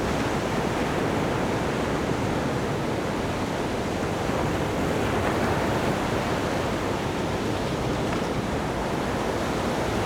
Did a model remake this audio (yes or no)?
yes